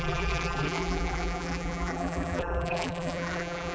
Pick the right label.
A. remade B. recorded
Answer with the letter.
A